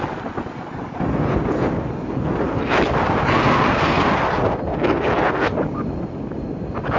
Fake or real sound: real